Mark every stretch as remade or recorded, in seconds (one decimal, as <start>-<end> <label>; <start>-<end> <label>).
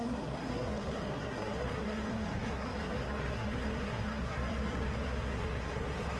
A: 0.0-6.2 remade